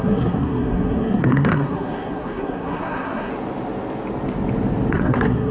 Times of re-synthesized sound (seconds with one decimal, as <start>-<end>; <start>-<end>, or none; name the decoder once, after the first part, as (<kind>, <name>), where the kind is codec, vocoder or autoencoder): 0.0-3.3 (codec, SNAC); 4.9-5.5